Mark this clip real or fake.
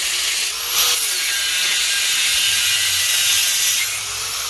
real